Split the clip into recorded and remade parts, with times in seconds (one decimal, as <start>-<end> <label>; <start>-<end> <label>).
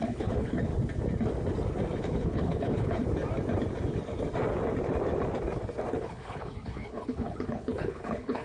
0.0-0.7 remade; 0.7-2.0 recorded; 2.0-3.0 remade; 3.0-5.9 recorded; 5.9-8.4 remade